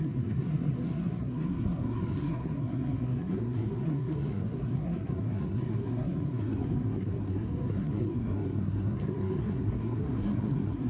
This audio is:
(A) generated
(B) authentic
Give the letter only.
A